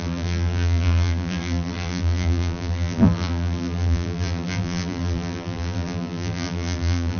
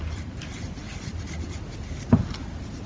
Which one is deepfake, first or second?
first